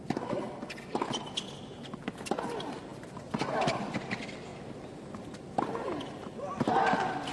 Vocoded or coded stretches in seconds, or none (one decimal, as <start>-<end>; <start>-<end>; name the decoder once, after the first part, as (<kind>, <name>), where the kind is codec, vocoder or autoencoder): none